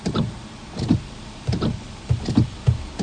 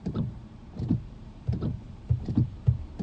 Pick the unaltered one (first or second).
first